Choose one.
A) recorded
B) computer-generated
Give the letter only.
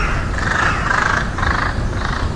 B